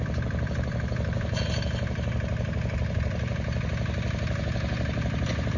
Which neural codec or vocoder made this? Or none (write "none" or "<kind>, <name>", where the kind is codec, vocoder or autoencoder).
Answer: none